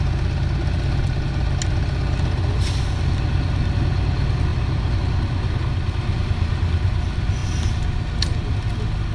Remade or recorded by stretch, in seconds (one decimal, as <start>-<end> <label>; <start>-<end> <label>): 0.0-4.5 recorded; 4.5-5.0 remade; 5.0-9.1 recorded